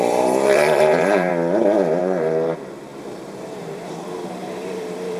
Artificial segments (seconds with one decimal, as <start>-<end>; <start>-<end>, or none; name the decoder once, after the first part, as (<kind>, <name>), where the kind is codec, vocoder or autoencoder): 0.0-1.3 (vocoder, BigVGAN v2); 2.0-5.2